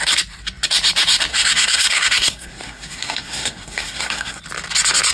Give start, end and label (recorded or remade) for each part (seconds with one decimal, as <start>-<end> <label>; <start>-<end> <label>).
0.0-1.3 recorded; 1.3-4.4 remade; 4.4-5.1 recorded